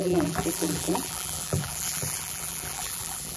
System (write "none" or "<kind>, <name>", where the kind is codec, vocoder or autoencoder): vocoder, BigVGAN v2